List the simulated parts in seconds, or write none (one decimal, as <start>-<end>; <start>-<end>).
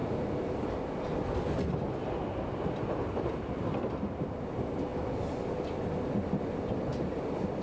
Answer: none